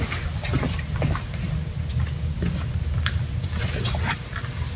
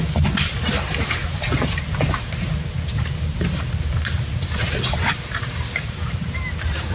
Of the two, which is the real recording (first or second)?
first